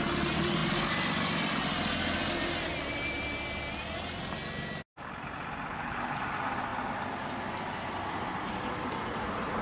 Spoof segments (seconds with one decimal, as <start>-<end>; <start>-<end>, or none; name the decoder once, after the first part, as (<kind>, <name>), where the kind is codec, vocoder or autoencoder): 5.7-6.2 (codec, HILCodec)